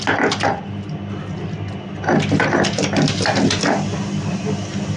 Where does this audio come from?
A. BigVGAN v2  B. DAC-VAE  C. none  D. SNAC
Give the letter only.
C